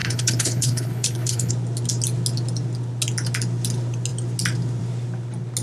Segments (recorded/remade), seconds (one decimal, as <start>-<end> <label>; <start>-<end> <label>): 0.0-1.5 remade; 1.5-5.6 recorded